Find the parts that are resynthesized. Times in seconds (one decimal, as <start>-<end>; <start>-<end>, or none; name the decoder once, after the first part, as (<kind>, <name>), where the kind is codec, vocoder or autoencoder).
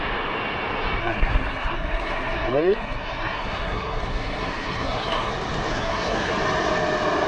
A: 1.0-5.3 (codec, SNAC); 5.7-6.3